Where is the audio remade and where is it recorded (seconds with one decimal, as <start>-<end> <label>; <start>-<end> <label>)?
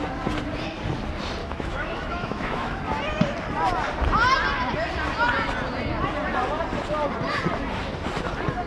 0.0-1.4 recorded; 1.4-2.8 remade; 2.8-8.7 recorded